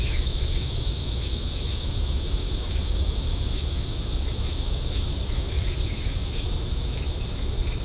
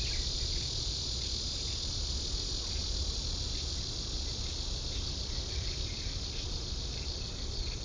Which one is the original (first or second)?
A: second